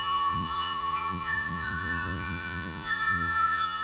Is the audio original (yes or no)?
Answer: no